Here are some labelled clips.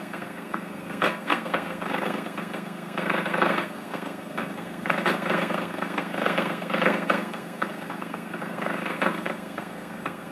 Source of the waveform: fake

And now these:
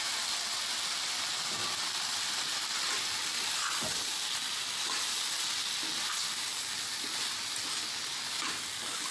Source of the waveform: real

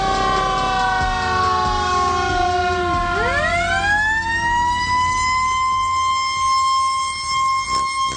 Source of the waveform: real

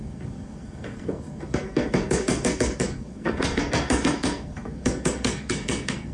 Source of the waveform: fake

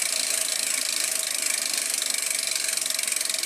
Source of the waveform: real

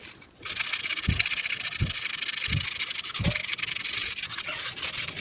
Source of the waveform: real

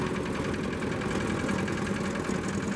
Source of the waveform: real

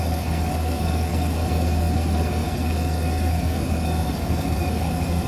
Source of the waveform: fake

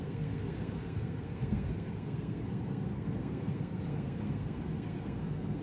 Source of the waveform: fake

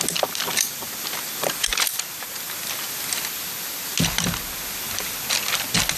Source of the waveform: real